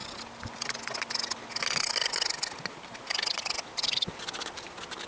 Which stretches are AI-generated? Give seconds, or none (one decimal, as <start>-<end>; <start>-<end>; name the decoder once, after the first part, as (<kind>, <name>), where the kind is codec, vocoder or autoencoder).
none